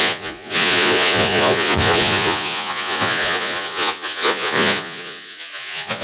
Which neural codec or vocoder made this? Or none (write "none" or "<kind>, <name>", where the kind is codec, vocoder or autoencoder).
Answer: vocoder, Vocos